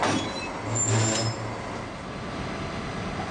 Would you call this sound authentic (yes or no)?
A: yes